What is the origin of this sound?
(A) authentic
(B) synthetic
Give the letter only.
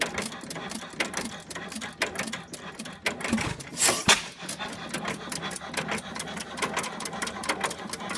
A